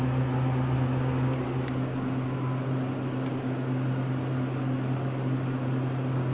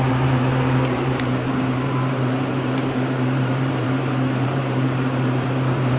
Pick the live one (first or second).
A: first